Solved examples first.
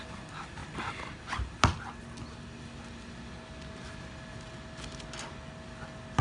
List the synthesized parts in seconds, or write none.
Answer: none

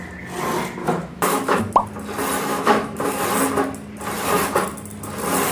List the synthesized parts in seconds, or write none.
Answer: 0.8-1.6 (autoencoder, DAC-VAE); 2.5-3.2

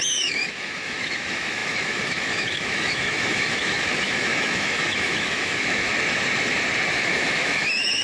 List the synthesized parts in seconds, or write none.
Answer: 0.0-5.9 (autoencoder, DAC-VAE); 7.0-8.0

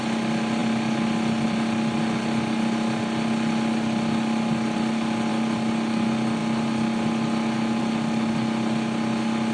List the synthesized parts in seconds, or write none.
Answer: none

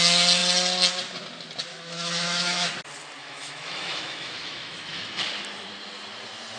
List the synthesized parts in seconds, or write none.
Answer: 1.7-2.7 (autoencoder, DAC-VAE); 3.2-5.2